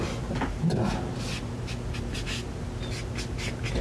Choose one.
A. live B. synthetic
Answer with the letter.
A